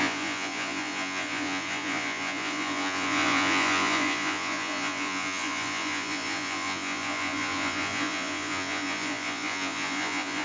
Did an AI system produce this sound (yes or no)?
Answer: yes